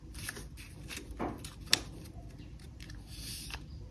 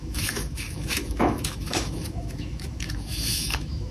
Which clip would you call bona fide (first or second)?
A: first